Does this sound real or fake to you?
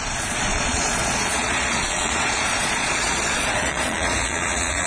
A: fake